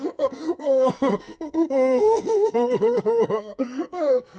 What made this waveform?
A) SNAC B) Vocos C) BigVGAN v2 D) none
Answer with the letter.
A